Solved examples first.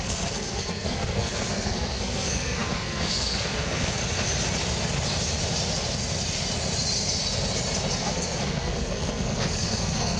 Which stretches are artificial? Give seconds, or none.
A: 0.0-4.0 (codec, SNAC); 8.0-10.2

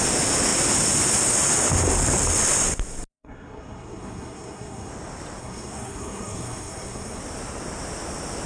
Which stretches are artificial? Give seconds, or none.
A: 3.1-4.9 (codec, SNAC); 5.4-7.2

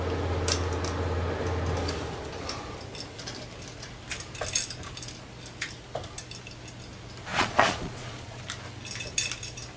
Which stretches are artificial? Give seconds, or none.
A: 7.3-8.4 (vocoder, Vocos)

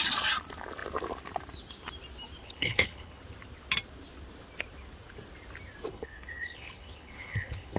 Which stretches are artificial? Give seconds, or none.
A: 2.4-3.2 (codec, HILCodec); 5.9-7.8

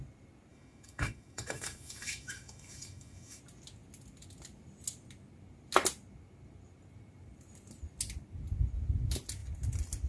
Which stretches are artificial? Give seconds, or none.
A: 0.5-3.4 (autoencoder, DAC-VAE)

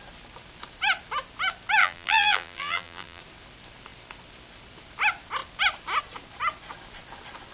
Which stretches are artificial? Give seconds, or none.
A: 1.8-3.2 (vocoder, BigVGAN v2)

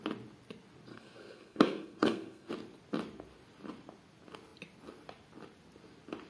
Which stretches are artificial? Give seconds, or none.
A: 0.9-2.5 (codec, SNAC)